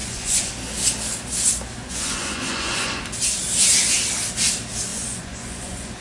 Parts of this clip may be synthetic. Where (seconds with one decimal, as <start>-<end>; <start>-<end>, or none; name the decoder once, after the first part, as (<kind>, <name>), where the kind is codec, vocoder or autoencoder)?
0.0-0.5 (vocoder, Vocos); 1.8-3.0; 4.9-6.0